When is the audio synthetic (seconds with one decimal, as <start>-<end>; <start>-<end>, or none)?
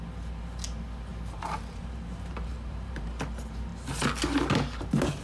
1.1-3.2